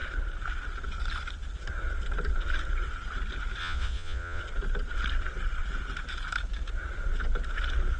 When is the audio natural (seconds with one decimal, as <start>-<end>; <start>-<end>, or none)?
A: 0.0-3.6; 4.4-8.0